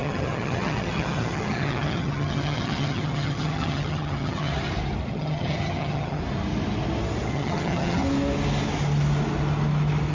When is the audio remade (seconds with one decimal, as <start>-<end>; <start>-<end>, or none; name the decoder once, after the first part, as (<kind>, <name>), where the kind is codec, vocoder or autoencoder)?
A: 0.0-4.5 (vocoder, HiFi-GAN); 5.1-6.2; 7.3-8.0